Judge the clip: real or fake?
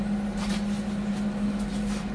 real